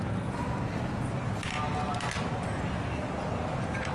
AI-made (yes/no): no